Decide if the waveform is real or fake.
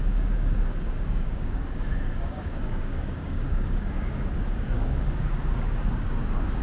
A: fake